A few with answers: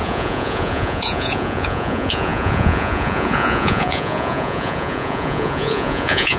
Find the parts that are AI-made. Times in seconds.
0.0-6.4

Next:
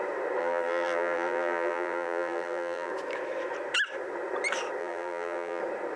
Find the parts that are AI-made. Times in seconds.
0.4-2.9; 4.8-5.6

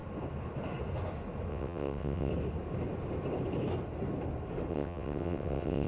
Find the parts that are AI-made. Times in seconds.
1.5-2.3; 4.7-5.9

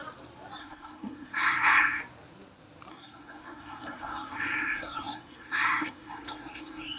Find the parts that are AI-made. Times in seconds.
0.6-2.0; 2.9-7.0

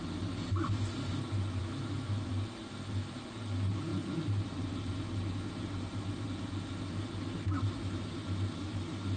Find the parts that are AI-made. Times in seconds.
1.6-2.3

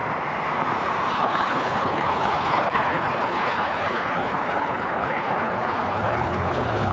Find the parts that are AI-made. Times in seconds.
1.1-6.9

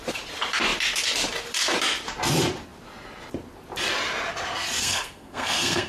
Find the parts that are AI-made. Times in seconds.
4.8-5.9